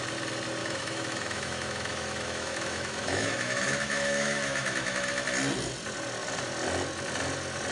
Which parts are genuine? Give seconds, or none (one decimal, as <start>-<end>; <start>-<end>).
0.0-0.6; 5.1-7.7